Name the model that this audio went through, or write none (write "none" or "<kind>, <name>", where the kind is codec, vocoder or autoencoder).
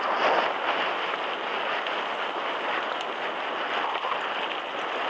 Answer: none